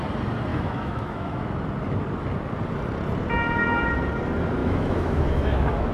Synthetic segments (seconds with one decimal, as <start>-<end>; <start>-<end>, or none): 0.5-1.4; 4.6-5.9